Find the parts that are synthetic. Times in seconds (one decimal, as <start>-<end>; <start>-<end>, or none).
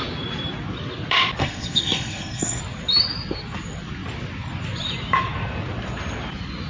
1.4-2.6